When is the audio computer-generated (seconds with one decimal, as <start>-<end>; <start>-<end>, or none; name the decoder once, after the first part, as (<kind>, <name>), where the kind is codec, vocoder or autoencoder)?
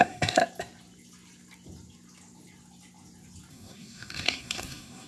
0.0-0.4 (codec, SNAC); 3.5-5.1